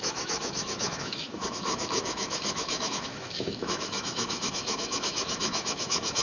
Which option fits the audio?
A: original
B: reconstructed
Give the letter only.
B